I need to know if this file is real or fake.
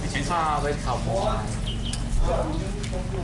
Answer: real